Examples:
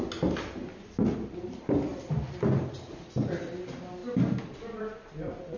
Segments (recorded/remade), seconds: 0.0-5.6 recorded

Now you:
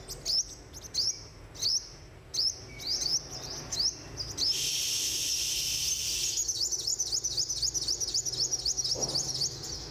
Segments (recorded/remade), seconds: 0.0-9.9 recorded

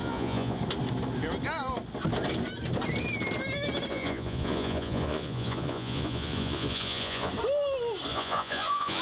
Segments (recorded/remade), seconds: 0.0-0.6 remade; 0.6-3.9 recorded; 3.9-7.3 remade; 7.3-8.1 recorded; 8.1-9.0 remade

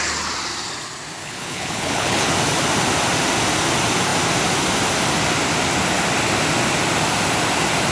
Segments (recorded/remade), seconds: 0.0-1.2 recorded; 1.2-2.3 remade; 2.3-7.9 recorded